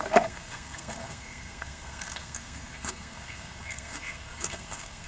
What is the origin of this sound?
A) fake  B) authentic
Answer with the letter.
A